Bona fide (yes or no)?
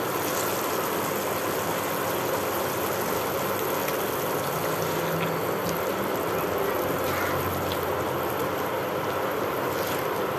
yes